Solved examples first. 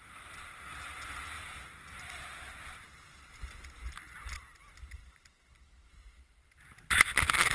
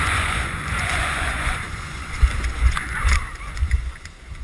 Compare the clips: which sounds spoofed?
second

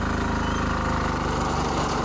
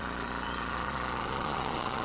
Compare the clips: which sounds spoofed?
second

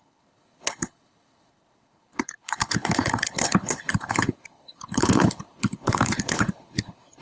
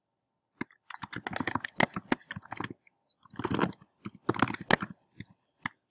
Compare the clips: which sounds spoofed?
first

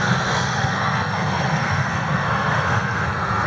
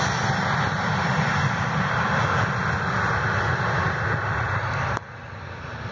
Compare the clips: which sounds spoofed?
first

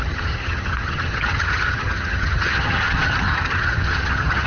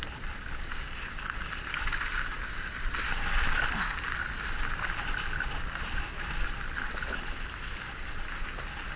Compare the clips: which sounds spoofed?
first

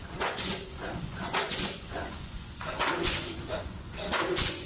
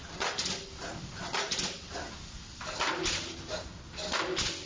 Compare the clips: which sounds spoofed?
first